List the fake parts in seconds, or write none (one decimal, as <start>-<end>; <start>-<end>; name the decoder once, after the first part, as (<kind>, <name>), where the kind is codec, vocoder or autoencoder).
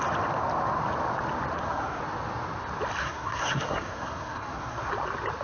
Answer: 1.5-2.0 (codec, SNAC); 3.0-4.9